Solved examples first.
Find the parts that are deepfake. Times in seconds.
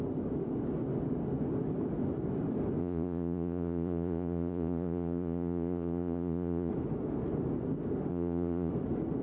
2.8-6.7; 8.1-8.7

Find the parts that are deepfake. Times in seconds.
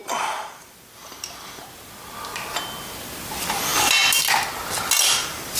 0.0-1.0